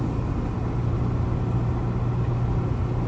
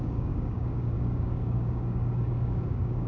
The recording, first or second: first